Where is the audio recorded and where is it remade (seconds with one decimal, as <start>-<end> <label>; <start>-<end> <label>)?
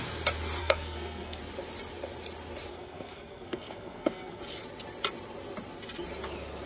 0.0-0.6 recorded; 0.6-1.4 remade; 1.4-2.7 recorded; 2.7-4.4 remade; 4.4-6.7 recorded